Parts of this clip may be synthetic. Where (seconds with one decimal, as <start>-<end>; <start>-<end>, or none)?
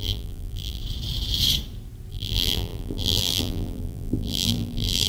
0.0-0.8; 2.1-5.1